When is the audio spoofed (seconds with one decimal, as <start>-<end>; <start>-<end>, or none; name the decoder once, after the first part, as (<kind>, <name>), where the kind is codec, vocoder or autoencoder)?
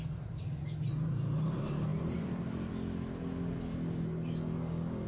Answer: 1.9-2.7 (vocoder, BigVGAN v2)